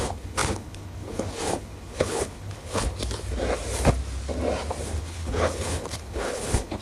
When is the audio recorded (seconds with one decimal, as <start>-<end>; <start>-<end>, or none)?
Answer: 3.0-5.0